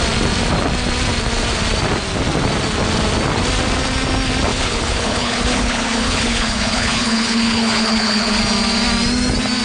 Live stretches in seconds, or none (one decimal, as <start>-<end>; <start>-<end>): 0.0-4.5; 8.4-9.6